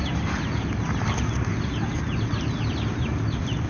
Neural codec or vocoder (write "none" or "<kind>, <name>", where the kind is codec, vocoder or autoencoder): none